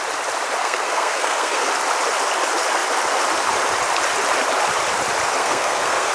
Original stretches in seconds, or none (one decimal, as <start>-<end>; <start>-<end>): 0.0-0.6; 1.7-5.4